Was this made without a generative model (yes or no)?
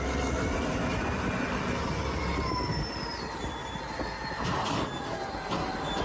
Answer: yes